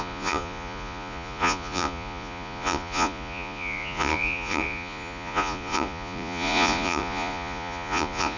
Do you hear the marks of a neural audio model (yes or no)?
yes